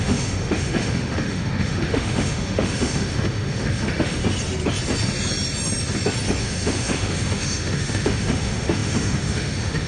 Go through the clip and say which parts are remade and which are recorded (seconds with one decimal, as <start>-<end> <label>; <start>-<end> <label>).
0.0-4.2 remade; 4.2-6.4 recorded; 6.4-9.9 remade